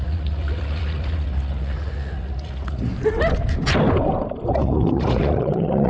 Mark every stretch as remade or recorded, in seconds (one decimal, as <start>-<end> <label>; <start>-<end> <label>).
0.0-2.9 remade; 2.9-4.6 recorded; 4.6-5.9 remade